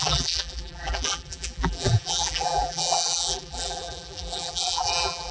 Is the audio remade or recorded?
remade